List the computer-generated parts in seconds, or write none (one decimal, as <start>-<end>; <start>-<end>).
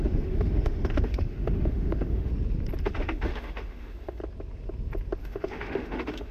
0.0-2.3; 2.8-4.2; 5.2-6.3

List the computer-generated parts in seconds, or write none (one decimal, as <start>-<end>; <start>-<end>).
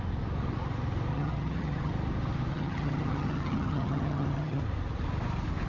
1.1-1.9; 2.5-4.6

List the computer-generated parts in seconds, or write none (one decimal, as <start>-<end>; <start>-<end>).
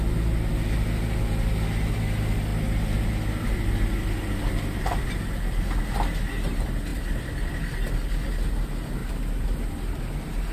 6.9-7.5